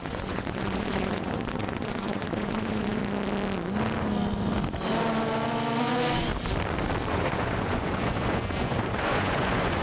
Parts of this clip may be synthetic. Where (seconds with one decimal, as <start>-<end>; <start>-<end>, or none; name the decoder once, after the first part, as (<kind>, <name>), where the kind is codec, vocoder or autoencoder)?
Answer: 0.0-3.0 (vocoder, Vocos); 5.8-6.3; 7.1-9.8